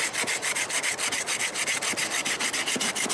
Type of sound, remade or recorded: remade